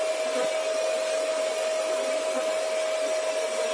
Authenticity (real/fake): real